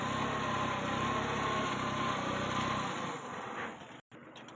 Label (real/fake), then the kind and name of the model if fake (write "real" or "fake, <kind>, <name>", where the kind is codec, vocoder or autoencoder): real